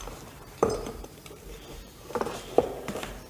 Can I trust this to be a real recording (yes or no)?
no